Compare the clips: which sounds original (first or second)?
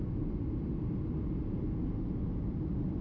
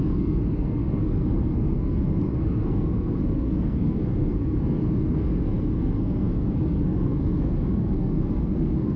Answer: first